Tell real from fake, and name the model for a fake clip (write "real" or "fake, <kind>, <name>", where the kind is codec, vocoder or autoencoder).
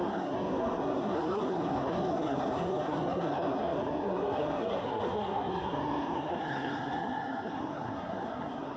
fake, codec, SNAC